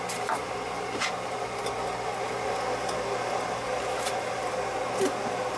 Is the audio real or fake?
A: real